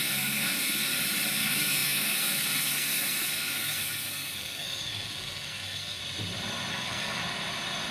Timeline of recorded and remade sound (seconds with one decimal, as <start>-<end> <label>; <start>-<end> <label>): 0.0-0.9 remade; 0.9-1.4 recorded; 1.4-6.0 remade; 6.0-6.7 recorded; 6.7-7.2 remade; 7.2-7.9 recorded